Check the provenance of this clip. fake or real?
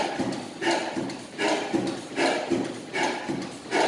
real